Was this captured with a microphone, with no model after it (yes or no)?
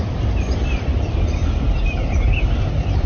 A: yes